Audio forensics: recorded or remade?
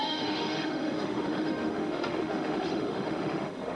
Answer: remade